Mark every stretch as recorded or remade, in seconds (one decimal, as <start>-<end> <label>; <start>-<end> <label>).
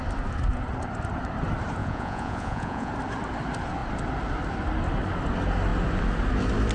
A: 0.0-1.8 recorded; 1.8-2.9 remade; 2.9-6.7 recorded